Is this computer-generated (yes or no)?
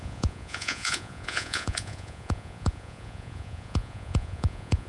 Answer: yes